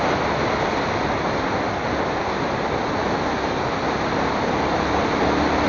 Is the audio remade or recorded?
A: recorded